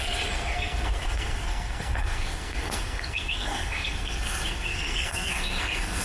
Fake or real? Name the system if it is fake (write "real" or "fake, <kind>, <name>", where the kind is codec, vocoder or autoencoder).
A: fake, codec, SNAC